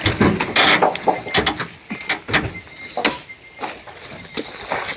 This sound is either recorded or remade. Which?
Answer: recorded